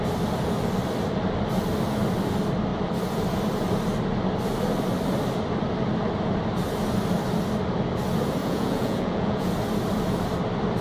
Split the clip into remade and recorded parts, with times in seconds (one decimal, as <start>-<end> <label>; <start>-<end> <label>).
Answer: 0.0-8.4 recorded; 8.4-9.5 remade; 9.5-10.8 recorded